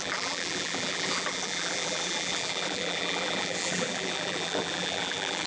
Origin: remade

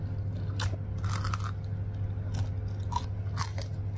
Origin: recorded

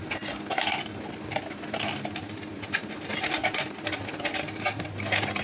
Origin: recorded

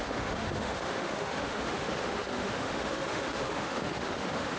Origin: remade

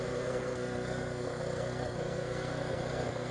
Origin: remade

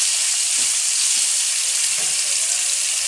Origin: recorded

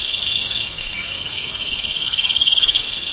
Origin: remade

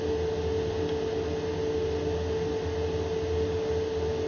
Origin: recorded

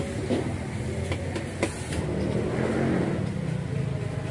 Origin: recorded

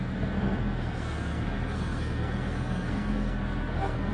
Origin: remade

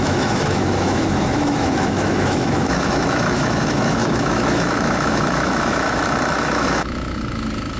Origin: remade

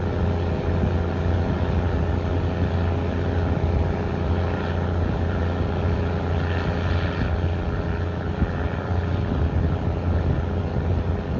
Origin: recorded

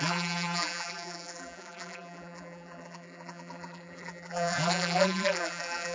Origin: remade